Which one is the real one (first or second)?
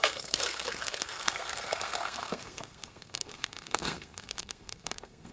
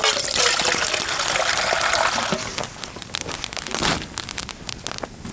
second